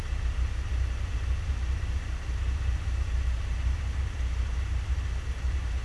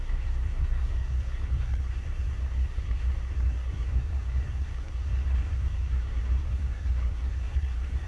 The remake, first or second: second